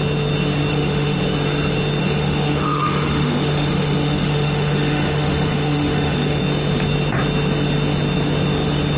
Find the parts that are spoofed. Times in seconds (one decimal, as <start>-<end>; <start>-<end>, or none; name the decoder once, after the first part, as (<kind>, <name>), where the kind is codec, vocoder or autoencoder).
0.7-1.2 (autoencoder, DAC-VAE); 2.0-6.4